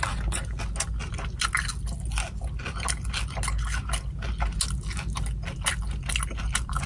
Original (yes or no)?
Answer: yes